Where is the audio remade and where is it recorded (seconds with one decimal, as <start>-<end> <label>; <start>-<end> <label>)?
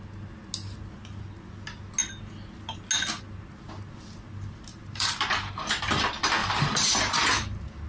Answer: 0.0-4.7 recorded; 4.7-5.8 remade; 5.8-6.4 recorded; 6.4-7.2 remade; 7.2-7.9 recorded